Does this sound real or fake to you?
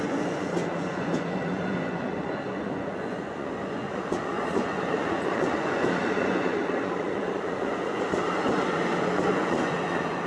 fake